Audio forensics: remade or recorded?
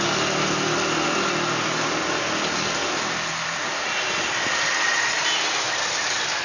recorded